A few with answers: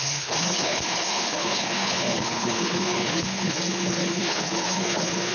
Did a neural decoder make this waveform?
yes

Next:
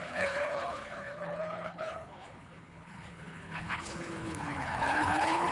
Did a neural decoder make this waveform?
yes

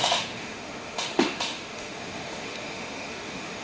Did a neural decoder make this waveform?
yes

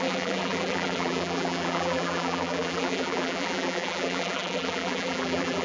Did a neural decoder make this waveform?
yes